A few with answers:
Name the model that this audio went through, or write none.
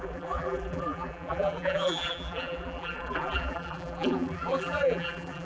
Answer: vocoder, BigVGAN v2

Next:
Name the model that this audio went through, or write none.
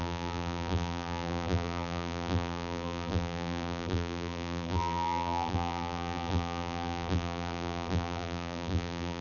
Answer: vocoder, BigVGAN v2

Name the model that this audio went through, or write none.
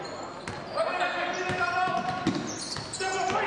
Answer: none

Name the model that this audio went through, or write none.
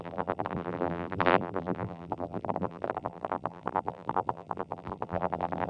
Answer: vocoder, BigVGAN v2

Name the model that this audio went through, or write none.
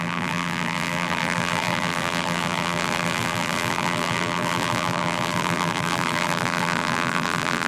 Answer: vocoder, BigVGAN v2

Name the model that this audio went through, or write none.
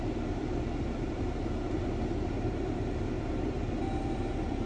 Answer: vocoder, BigVGAN v2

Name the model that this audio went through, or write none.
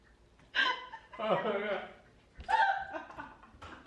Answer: none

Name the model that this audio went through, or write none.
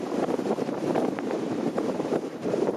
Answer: vocoder, BigVGAN v2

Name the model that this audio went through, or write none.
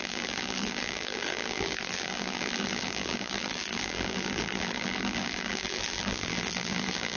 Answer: vocoder, BigVGAN v2